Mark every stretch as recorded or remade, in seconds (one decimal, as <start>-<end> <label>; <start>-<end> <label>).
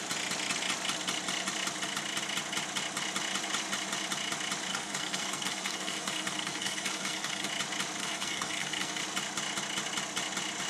0.0-4.7 recorded; 4.7-7.5 remade; 7.5-8.0 recorded; 8.0-9.0 remade; 9.0-10.7 recorded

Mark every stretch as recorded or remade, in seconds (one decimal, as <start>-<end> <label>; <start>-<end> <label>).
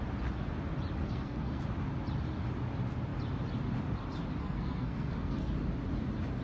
0.0-1.0 recorded; 1.0-1.6 remade; 1.6-4.4 recorded; 4.4-5.5 remade; 5.5-6.4 recorded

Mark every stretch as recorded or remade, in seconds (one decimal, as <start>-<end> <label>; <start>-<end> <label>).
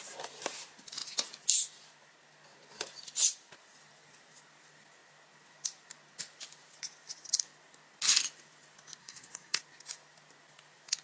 0.0-9.0 recorded; 9.0-9.6 remade; 9.6-11.0 recorded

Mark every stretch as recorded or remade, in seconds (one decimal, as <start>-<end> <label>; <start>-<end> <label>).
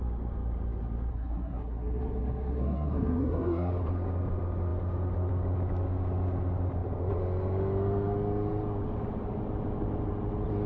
0.0-1.1 recorded; 1.1-3.7 remade; 3.7-10.7 recorded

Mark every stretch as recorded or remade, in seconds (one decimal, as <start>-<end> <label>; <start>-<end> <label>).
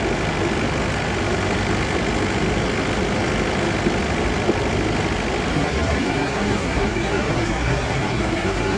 0.0-5.5 recorded; 5.5-8.8 remade